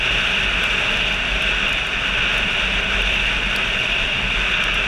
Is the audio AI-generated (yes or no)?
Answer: no